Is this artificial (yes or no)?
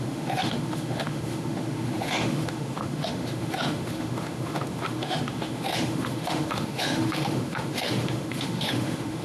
yes